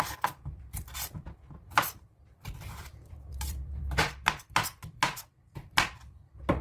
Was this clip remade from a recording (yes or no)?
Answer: yes